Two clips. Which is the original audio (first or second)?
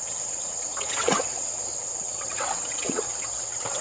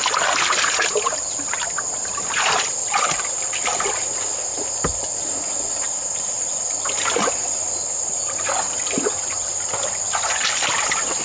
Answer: second